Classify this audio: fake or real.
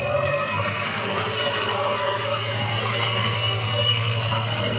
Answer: fake